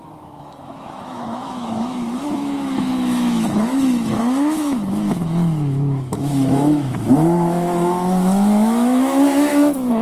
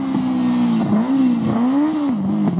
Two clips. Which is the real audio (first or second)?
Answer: second